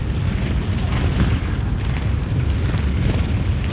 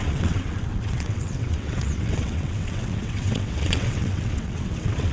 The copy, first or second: second